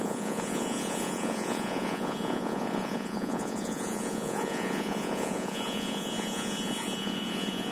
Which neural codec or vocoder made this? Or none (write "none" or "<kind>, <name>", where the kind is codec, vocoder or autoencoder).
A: vocoder, Vocos